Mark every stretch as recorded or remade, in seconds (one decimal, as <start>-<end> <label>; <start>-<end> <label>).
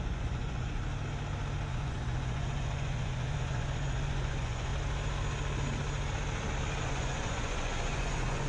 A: 0.0-0.9 remade; 0.9-1.7 recorded; 1.7-4.7 remade; 4.7-6.8 recorded; 6.8-8.5 remade